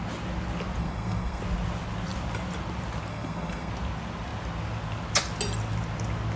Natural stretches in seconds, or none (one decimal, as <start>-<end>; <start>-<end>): 0.0-0.8; 1.4-3.1; 3.7-6.4